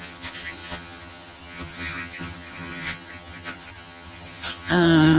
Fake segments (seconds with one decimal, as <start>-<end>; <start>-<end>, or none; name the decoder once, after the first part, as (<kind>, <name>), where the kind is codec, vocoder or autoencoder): 0.0-5.2 (vocoder, HiFi-GAN)